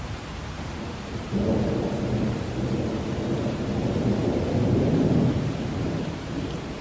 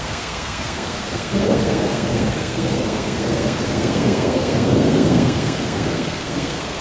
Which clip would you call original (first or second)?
first